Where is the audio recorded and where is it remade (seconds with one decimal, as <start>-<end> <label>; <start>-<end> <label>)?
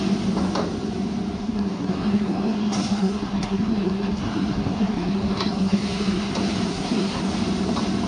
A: 0.0-1.4 recorded; 1.4-6.3 remade; 6.3-6.7 recorded; 6.7-7.2 remade; 7.2-8.1 recorded